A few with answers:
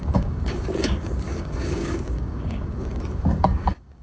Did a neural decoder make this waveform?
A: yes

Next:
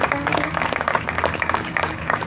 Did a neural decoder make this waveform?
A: yes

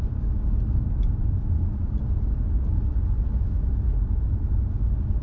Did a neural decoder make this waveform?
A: no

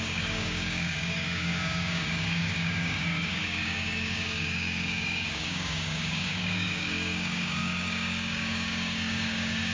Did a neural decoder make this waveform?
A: yes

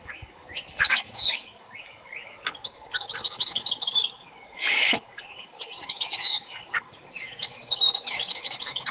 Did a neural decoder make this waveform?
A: yes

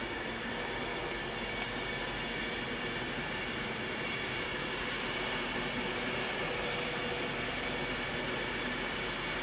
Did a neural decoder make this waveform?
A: no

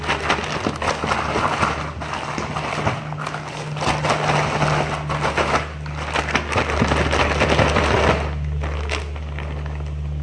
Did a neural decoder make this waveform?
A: no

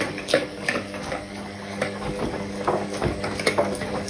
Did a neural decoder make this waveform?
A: yes